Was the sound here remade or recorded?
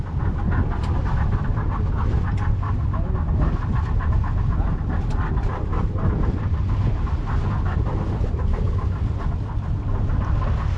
recorded